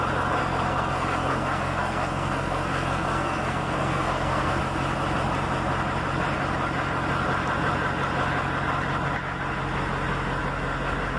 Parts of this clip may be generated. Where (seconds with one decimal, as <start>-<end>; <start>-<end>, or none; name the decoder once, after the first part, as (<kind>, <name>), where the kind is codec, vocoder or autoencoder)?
0.4-4.6 (codec, SNAC)